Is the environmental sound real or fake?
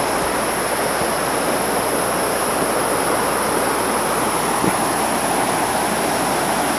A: real